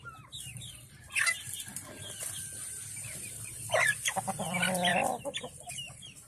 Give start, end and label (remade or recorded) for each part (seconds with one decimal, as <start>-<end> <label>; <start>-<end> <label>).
0.0-4.9 remade; 4.9-5.4 recorded; 5.4-6.3 remade